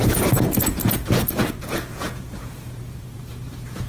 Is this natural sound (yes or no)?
no